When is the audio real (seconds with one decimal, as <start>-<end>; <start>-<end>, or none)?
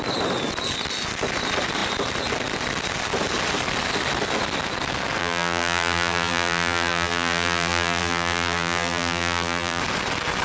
0.0-5.2; 9.8-10.4